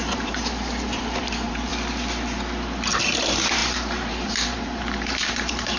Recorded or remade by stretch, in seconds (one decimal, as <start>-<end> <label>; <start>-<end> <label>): 0.0-1.7 remade; 1.7-3.0 recorded; 3.0-5.8 remade